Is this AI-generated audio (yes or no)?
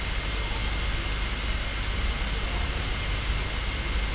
no